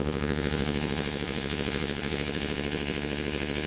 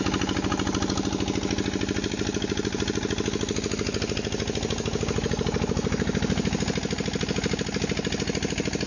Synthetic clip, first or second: first